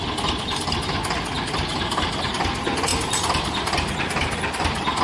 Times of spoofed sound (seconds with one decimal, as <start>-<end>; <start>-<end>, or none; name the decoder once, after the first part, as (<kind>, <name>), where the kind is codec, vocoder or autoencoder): 1.7-2.4 (vocoder, BigVGAN v2); 2.9-5.0

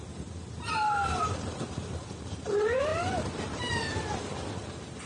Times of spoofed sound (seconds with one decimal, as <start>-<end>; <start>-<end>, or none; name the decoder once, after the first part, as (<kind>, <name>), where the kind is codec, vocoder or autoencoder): 2.9-3.7 (vocoder, BigVGAN v2)

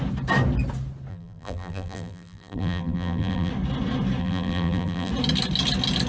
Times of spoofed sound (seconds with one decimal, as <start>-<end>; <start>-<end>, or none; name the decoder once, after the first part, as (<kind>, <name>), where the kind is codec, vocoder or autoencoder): 1.1-3.5 (vocoder, BigVGAN v2); 4.2-5.1

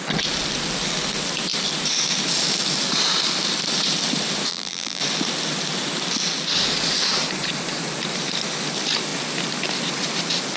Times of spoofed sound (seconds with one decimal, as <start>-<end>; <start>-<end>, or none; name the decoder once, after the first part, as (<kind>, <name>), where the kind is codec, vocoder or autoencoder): 4.5-5.0 (vocoder, BigVGAN v2)